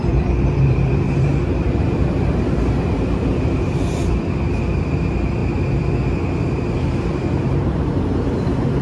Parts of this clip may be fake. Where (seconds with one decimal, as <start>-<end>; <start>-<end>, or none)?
0.0-1.3; 2.9-5.4; 6.4-8.8